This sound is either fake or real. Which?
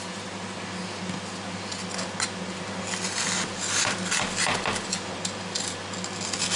real